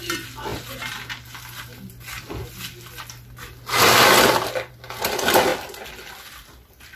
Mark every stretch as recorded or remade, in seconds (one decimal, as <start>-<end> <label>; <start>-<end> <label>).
0.0-7.0 recorded